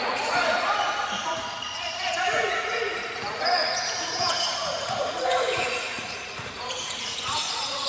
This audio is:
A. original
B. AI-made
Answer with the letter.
B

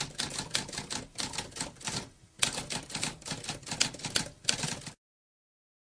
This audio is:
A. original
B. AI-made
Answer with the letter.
A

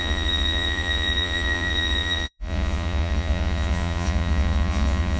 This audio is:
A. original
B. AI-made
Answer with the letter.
B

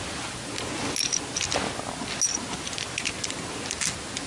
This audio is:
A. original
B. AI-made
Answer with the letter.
A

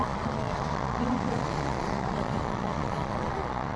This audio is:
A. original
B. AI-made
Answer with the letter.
B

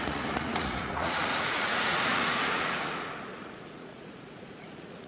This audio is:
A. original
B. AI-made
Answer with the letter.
B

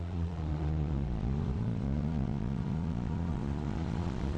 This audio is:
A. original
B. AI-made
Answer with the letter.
B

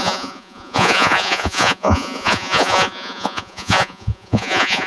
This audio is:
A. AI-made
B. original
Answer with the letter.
A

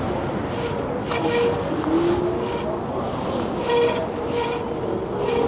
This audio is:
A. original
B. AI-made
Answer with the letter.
A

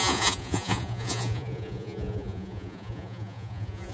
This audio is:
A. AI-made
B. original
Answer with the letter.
A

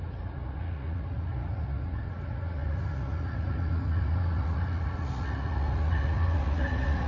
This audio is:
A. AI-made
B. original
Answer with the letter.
A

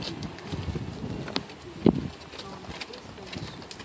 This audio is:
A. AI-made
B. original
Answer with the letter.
B